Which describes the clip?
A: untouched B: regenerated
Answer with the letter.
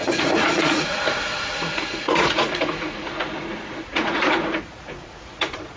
B